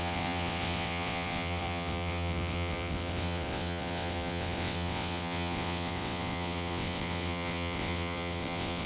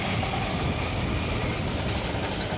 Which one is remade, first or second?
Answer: first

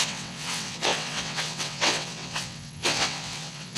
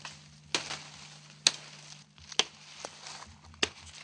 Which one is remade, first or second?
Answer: first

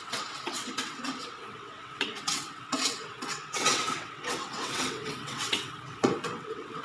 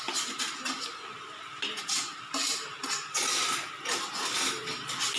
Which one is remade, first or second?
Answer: first